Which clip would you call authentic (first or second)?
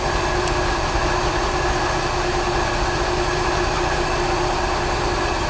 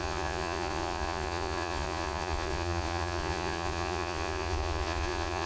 first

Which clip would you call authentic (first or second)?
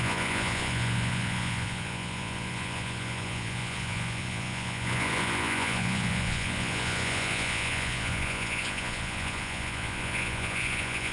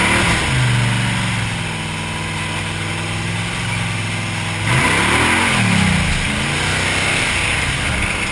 second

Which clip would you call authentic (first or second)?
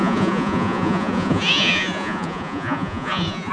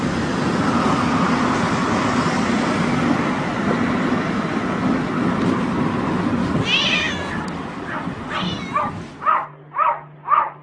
second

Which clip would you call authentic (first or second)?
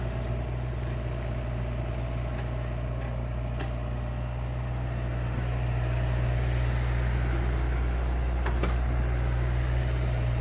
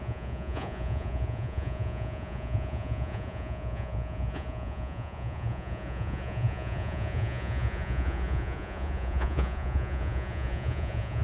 first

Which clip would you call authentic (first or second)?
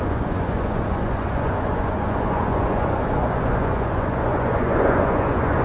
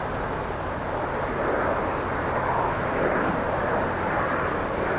second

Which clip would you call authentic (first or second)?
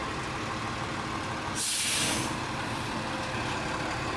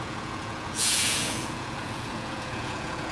first